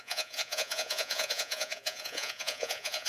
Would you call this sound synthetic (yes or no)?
yes